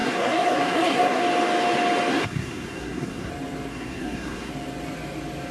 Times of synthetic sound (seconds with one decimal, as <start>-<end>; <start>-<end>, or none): 0.0-1.2; 2.1-3.3; 3.7-4.5